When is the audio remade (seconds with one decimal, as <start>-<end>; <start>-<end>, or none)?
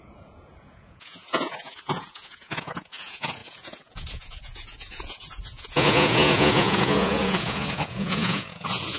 0.0-9.0